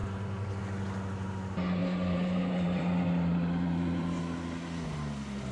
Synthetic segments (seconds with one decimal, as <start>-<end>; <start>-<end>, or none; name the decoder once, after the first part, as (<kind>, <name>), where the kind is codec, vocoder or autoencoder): 0.0-0.6 (vocoder, BigVGAN v2); 1.8-4.2